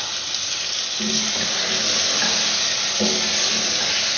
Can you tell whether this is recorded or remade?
recorded